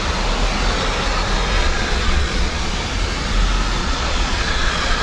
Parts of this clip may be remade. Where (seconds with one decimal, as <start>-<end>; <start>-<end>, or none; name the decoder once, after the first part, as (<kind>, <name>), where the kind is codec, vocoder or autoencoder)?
1.6-2.7 (vocoder, Vocos); 3.8-5.0